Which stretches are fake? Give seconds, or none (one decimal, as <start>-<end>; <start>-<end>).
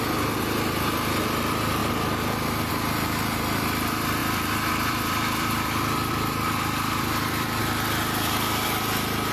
4.2-7.6